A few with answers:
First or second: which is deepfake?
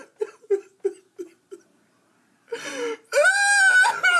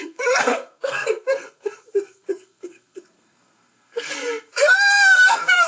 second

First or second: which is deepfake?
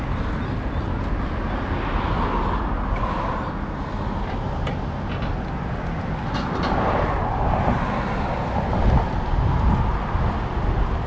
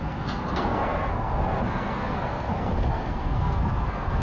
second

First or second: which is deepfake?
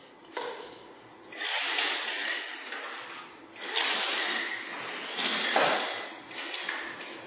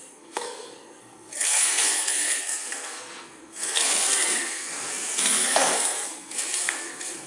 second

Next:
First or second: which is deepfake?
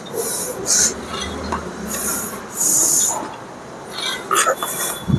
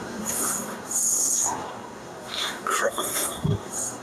second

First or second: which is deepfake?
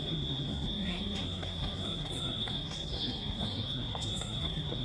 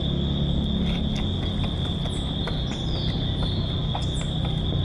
first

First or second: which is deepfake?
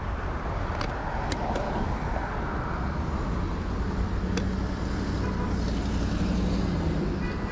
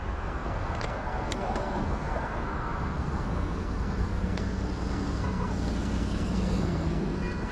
second